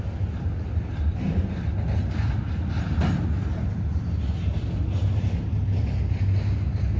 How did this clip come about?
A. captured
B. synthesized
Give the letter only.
A